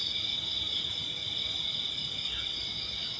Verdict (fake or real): real